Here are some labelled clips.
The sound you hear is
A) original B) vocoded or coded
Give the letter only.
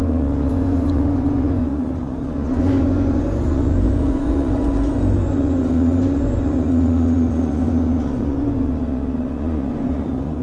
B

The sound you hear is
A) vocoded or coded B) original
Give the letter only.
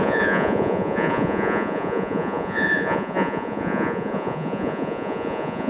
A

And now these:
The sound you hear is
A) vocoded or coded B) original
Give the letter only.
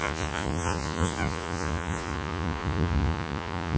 A